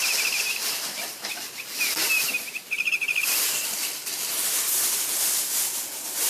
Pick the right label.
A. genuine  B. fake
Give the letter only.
B